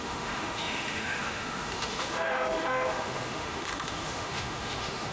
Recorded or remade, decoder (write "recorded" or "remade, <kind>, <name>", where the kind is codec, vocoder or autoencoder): remade, autoencoder, DAC-VAE